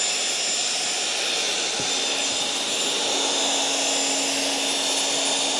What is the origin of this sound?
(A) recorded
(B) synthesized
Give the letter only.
A